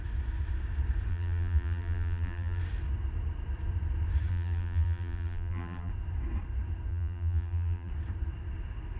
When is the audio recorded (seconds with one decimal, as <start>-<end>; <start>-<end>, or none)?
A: 0.0-1.1; 2.6-4.3; 5.9-6.9; 7.9-9.0